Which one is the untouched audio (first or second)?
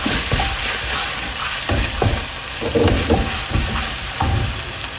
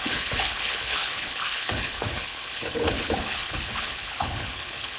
first